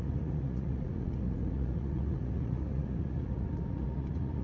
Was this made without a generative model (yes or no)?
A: no